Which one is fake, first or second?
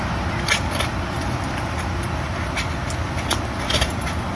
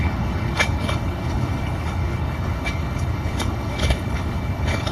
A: second